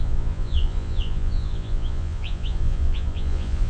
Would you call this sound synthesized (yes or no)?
yes